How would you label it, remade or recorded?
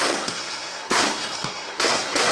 remade